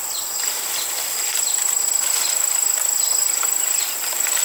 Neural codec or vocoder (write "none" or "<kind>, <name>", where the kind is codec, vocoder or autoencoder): vocoder, BigVGAN v2